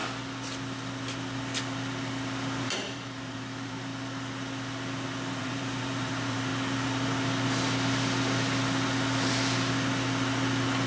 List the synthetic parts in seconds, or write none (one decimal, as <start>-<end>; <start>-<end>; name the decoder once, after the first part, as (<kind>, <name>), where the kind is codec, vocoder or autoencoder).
2.6-3.9 (vocoder, BigVGAN v2); 5.4-6.5